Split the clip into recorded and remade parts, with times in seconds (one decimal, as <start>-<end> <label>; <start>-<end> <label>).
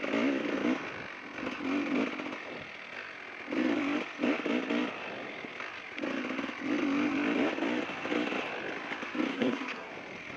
0.0-9.3 recorded; 9.3-9.9 remade; 9.9-10.4 recorded